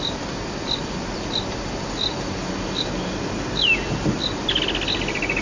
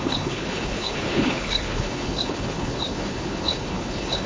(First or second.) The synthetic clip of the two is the second